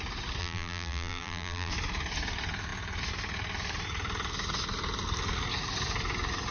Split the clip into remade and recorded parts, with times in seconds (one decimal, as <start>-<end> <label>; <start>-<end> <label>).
0.0-0.4 recorded; 0.4-1.7 remade; 1.7-6.5 recorded